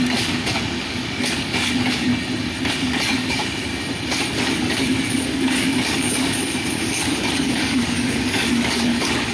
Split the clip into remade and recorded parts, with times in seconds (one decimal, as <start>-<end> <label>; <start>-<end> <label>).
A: 0.0-2.1 remade; 2.1-2.7 recorded; 2.7-3.7 remade; 3.7-4.3 recorded; 4.3-9.3 remade